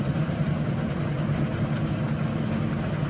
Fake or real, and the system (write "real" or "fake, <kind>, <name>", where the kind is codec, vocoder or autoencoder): real